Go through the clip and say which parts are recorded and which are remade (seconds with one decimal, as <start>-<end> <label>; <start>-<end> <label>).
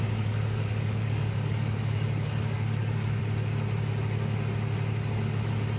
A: 0.0-3.2 remade; 3.2-5.8 recorded